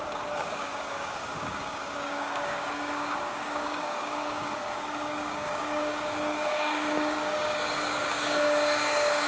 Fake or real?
fake